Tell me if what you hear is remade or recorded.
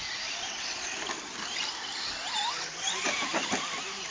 remade